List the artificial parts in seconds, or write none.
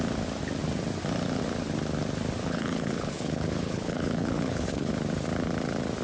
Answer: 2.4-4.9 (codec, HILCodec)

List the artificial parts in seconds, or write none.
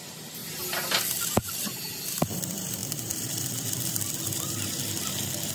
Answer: 0.0-0.4 (vocoder, BigVGAN v2); 1.2-5.5